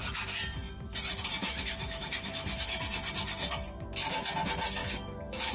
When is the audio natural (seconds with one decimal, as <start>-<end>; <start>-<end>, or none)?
0.0-1.4; 2.8-4.8